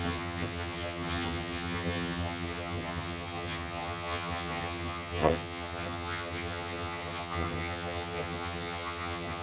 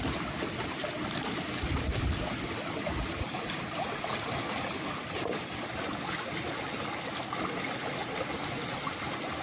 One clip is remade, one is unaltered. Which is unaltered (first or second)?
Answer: second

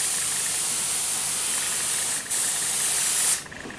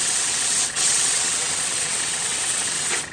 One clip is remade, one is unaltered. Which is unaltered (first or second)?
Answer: first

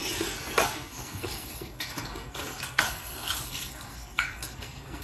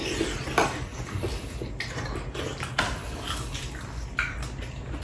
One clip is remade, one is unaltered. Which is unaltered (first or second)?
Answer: second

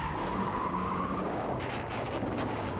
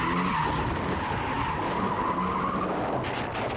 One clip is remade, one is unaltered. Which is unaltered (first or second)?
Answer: second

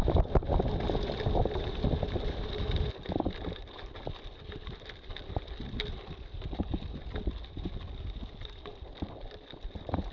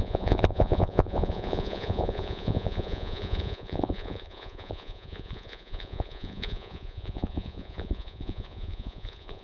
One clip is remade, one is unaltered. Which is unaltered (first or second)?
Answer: first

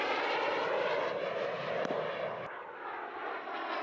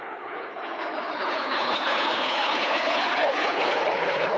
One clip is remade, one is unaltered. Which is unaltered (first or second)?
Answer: first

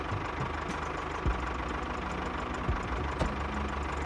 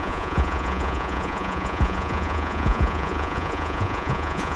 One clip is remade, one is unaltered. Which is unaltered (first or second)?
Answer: first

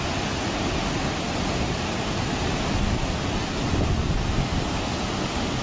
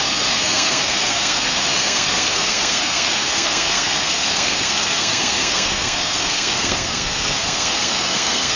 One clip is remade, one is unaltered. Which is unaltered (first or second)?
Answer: first